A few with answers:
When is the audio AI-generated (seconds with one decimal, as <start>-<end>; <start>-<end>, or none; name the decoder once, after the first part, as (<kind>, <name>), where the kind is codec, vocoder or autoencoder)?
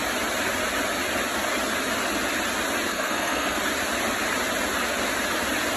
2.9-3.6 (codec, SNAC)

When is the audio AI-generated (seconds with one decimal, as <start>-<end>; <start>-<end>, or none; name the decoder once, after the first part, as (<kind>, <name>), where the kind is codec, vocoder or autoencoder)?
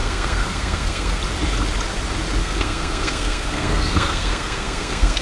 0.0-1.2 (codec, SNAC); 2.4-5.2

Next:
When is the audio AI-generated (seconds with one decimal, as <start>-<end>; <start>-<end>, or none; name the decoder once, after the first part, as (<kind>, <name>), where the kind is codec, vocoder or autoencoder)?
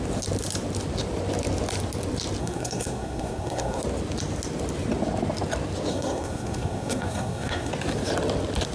2.4-3.8 (codec, SNAC); 5.9-7.7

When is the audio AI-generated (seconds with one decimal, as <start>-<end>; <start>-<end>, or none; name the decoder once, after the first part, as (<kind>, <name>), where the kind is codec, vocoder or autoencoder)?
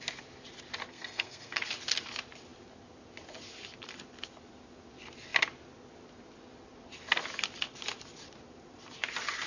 0.9-1.6 (codec, SNAC)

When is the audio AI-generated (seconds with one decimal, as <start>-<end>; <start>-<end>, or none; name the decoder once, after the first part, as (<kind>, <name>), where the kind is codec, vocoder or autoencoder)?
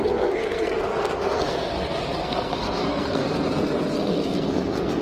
0.0-3.2 (codec, SNAC); 3.9-5.0